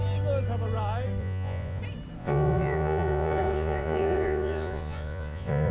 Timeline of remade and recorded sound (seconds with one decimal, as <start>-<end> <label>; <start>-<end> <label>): 0.0-1.2 recorded; 1.2-1.8 remade; 1.8-2.2 recorded; 2.2-5.7 remade